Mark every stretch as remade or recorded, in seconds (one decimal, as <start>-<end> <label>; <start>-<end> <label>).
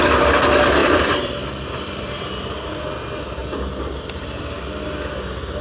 0.0-0.8 recorded; 0.8-2.2 remade; 2.2-3.4 recorded; 3.4-4.5 remade; 4.5-5.6 recorded